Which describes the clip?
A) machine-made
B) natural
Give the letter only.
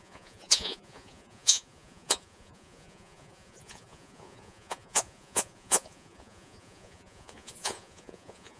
A